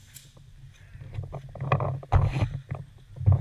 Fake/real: real